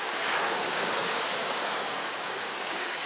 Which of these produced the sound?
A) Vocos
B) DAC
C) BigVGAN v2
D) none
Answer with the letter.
B